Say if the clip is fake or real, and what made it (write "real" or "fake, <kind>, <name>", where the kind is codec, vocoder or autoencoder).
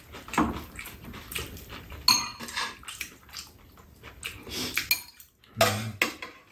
real